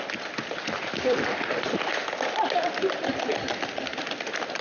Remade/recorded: recorded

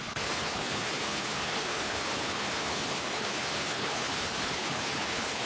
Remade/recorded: remade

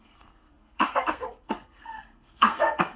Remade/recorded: remade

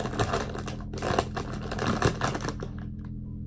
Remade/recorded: recorded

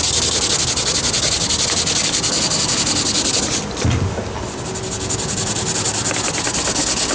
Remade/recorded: recorded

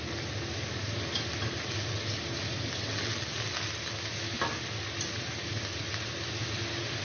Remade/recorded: recorded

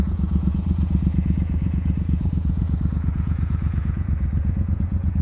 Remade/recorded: remade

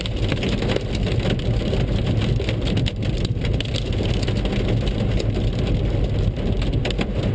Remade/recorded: recorded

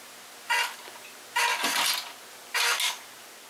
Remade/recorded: recorded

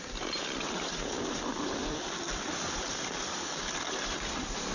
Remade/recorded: recorded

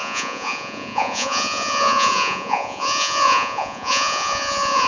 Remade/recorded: remade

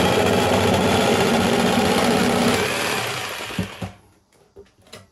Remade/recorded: recorded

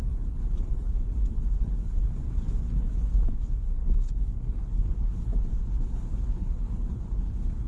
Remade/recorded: remade